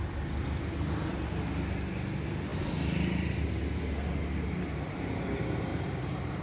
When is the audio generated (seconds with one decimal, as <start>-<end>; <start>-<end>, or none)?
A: 5.7-6.4